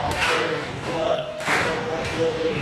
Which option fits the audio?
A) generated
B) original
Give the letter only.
A